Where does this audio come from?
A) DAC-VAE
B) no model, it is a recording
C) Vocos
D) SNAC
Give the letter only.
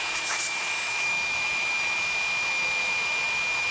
A